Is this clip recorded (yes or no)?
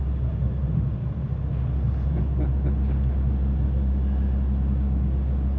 yes